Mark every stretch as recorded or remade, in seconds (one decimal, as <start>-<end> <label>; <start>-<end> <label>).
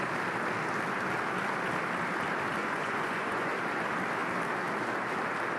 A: 0.0-2.6 recorded; 2.6-3.5 remade; 3.5-5.6 recorded